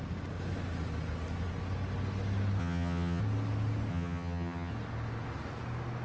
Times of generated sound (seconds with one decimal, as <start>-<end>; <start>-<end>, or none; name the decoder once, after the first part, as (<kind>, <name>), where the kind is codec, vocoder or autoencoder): 2.6-3.2 (vocoder, HiFi-GAN); 3.9-4.7